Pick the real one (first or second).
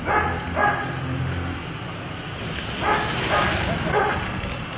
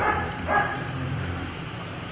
first